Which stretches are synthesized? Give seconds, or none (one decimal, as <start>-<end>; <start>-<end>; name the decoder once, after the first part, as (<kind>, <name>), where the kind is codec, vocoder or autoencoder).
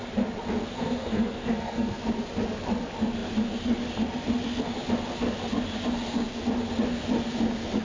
0.6-2.0 (codec, SNAC)